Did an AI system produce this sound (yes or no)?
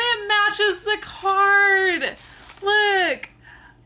no